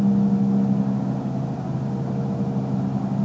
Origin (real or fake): real